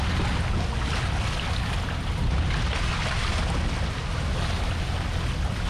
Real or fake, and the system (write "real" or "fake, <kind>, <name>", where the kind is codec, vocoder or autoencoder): real